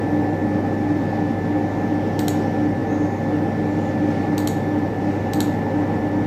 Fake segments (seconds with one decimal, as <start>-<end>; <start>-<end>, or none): none